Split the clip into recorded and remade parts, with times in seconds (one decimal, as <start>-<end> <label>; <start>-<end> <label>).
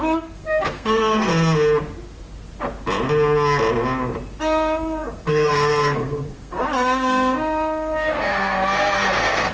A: 0.0-1.3 remade; 1.3-4.4 recorded; 4.4-9.5 remade